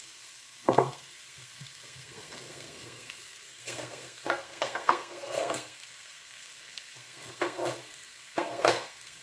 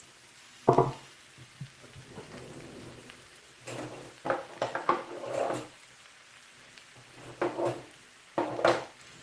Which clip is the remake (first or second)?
first